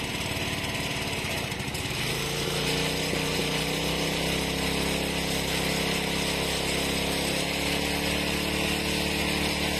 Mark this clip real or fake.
real